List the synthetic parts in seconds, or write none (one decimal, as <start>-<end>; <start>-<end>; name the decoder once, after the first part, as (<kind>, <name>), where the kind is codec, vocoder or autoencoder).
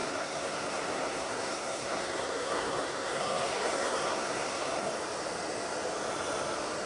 0.0-4.9 (codec, SNAC)